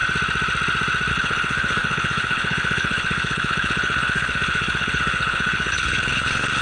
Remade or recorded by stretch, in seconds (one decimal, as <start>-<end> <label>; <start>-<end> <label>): 0.0-1.1 recorded; 1.1-6.6 remade